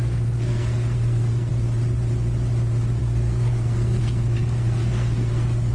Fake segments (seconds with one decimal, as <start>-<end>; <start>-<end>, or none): 0.0-1.5; 3.0-5.7